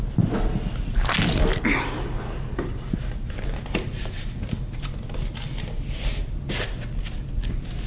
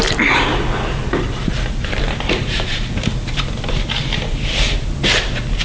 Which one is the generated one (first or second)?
second